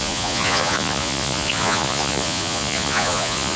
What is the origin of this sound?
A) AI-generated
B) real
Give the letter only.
A